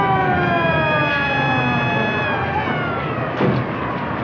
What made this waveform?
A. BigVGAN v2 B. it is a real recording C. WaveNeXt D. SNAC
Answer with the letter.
B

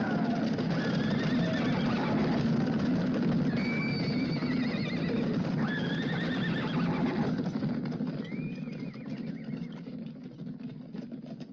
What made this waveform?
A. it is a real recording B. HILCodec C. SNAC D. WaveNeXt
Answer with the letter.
A